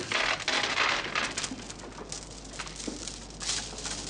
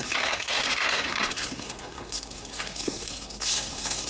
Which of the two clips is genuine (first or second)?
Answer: first